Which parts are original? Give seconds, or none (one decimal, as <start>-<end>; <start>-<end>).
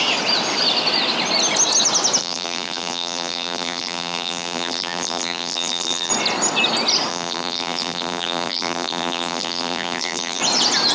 0.0-2.2; 6.1-7.1; 10.4-10.9